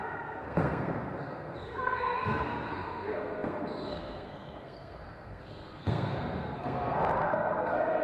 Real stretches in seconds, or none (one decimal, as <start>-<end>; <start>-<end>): none